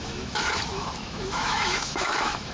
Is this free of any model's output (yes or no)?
no